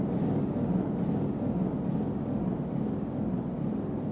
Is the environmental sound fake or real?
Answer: real